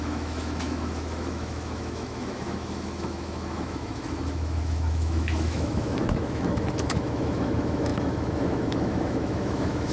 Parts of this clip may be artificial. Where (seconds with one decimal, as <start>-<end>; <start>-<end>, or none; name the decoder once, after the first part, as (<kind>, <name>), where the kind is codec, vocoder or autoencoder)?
0.0-9.9 (autoencoder, DAC-VAE)